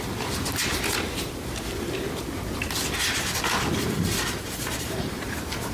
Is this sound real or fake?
real